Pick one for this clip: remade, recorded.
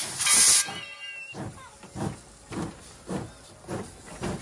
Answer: recorded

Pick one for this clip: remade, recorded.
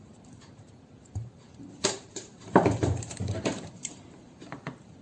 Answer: remade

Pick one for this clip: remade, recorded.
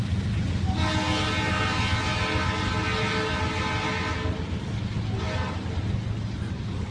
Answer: recorded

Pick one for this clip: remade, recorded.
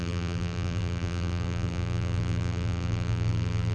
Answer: remade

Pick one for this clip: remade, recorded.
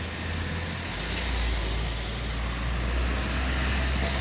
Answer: recorded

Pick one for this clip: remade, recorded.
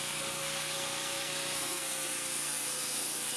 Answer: remade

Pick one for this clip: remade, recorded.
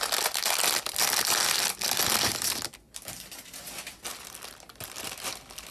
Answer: recorded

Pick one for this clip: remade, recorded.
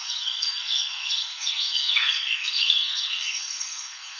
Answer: remade